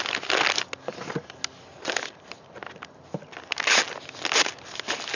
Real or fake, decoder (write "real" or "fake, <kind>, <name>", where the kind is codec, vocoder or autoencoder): real